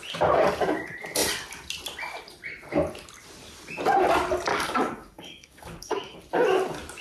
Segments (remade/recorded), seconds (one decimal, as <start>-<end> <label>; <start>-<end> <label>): 0.0-4.5 recorded; 4.5-6.2 remade; 6.2-7.0 recorded